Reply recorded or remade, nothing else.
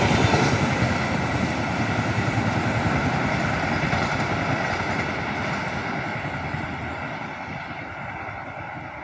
recorded